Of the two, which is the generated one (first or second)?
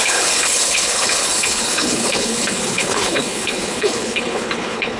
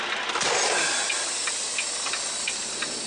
first